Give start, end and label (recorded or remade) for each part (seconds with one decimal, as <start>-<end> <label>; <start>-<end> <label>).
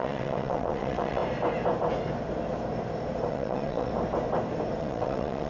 0.0-1.2 remade; 1.2-3.3 recorded; 3.3-3.9 remade; 3.9-4.8 recorded; 4.8-5.5 remade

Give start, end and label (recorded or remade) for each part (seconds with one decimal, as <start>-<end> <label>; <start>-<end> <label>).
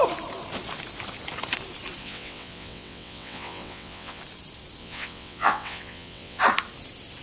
0.0-2.0 recorded; 2.0-4.2 remade; 4.2-4.8 recorded; 4.8-6.4 remade; 6.4-7.2 recorded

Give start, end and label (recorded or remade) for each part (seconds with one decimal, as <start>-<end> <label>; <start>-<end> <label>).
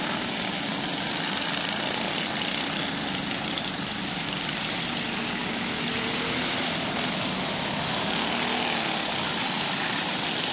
0.0-10.5 recorded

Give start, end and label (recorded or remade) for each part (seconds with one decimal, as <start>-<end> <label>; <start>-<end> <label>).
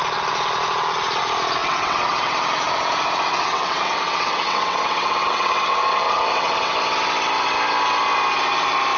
0.0-1.6 recorded; 1.6-2.3 remade; 2.3-3.3 recorded; 3.3-6.7 remade; 6.7-9.0 recorded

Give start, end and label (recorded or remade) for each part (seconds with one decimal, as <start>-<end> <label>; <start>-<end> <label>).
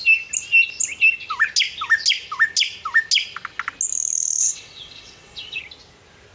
0.0-4.4 recorded; 4.4-5.6 remade; 5.6-6.3 recorded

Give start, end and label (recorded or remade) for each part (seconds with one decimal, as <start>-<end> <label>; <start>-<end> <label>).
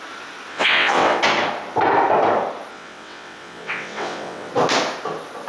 0.0-0.5 recorded; 0.5-1.2 remade; 1.2-2.7 recorded; 2.7-4.5 remade; 4.5-5.5 recorded